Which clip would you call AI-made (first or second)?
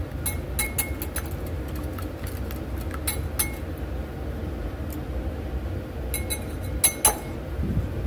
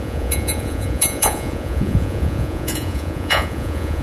second